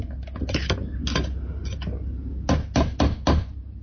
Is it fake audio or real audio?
real